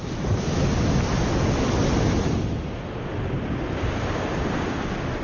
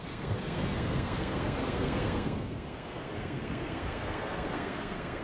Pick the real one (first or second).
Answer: first